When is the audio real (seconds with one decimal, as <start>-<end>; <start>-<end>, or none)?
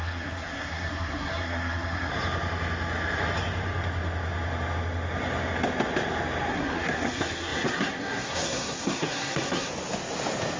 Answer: 2.1-6.5; 9.7-10.6